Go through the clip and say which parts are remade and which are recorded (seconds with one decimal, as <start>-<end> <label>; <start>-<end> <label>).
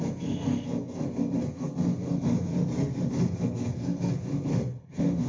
0.0-2.5 remade; 2.5-3.1 recorded; 3.1-5.3 remade